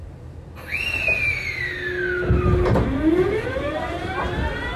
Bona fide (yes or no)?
yes